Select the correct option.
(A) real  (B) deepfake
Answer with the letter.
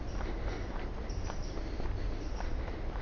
A